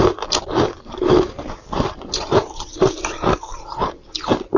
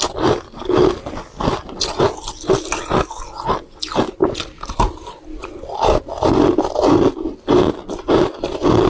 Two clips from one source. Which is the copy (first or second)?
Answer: first